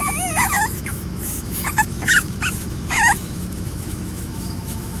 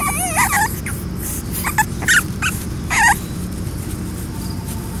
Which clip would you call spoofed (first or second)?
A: first